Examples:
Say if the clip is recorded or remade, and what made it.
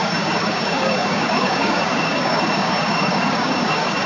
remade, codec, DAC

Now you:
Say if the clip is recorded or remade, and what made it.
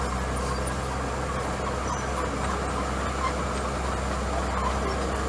recorded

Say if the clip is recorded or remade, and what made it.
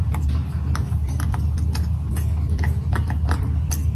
recorded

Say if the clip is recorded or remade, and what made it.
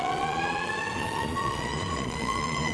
remade, vocoder, Vocos